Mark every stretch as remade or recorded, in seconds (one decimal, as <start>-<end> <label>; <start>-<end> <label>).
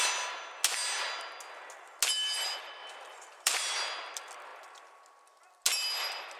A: 0.0-2.8 recorded; 2.8-3.7 remade; 3.7-6.4 recorded